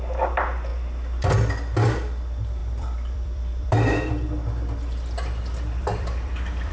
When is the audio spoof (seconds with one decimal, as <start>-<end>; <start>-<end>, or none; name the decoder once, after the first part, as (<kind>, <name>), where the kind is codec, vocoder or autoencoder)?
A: 2.6-4.1 (vocoder, BigVGAN v2); 5.8-6.7

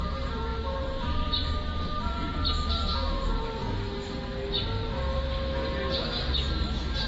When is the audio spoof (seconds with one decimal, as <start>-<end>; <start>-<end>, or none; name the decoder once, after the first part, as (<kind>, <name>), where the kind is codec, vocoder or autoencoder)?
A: 0.0-3.6 (vocoder, BigVGAN v2); 6.5-7.1

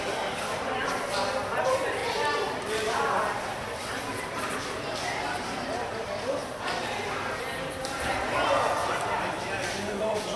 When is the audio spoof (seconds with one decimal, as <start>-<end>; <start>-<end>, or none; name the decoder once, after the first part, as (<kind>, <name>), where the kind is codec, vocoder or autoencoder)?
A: 0.0-2.0 (vocoder, BigVGAN v2); 2.6-6.4; 8.3-10.4

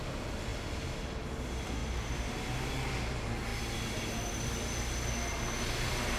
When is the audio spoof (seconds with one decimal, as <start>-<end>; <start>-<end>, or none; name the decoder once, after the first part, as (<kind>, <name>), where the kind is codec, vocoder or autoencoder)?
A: 1.8-2.3 (vocoder, BigVGAN v2)